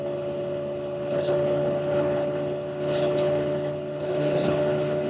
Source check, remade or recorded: remade